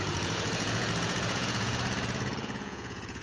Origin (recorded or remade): remade